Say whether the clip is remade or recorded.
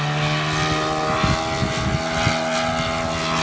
recorded